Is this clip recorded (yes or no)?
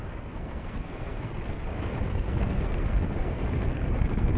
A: no